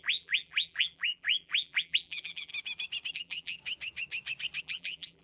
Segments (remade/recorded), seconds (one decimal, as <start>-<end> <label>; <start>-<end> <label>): 0.0-2.5 remade; 2.5-3.1 recorded; 3.1-3.6 remade; 3.6-4.6 recorded; 4.6-5.2 remade